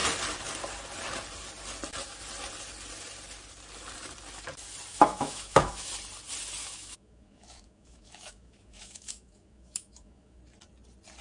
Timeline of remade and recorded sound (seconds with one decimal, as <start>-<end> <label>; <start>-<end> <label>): 0.0-4.9 recorded; 4.9-5.9 remade; 5.9-6.6 recorded; 6.6-10.4 remade; 10.4-11.2 recorded